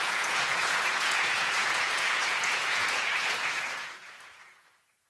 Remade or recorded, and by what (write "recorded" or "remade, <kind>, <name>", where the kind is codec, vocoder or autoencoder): remade, vocoder, Vocos